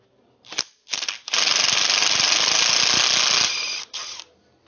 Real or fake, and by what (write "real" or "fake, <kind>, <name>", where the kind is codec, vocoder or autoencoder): real